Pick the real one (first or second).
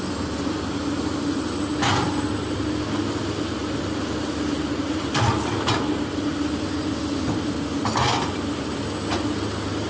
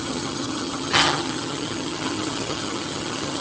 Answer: first